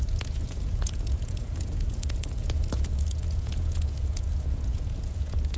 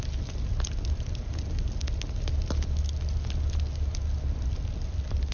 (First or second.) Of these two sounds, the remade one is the first